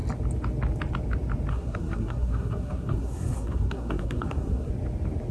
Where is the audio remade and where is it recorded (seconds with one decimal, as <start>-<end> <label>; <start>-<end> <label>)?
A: 0.0-1.5 recorded; 1.5-4.7 remade; 4.7-5.3 recorded